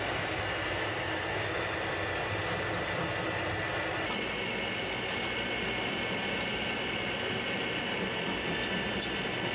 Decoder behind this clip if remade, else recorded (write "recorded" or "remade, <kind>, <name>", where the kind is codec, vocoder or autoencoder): recorded